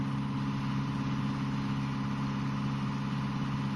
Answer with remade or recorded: recorded